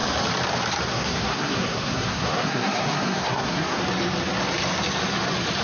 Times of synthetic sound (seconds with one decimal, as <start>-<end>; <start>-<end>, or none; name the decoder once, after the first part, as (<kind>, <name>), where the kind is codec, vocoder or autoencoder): 0.9-3.8 (codec, SNAC)